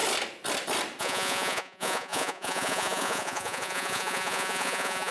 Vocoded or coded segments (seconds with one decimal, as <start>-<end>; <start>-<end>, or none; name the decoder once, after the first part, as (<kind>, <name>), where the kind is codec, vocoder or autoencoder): 1.0-5.1 (vocoder, Vocos)